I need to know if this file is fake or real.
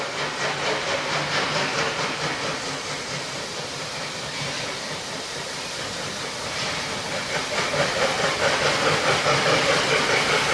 real